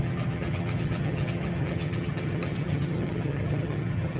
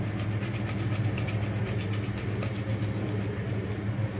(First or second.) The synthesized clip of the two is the first